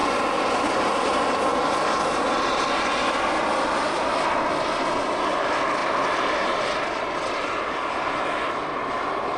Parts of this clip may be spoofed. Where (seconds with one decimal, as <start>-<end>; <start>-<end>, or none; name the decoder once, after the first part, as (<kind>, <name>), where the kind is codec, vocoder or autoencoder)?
none